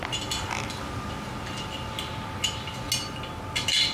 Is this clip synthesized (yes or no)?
no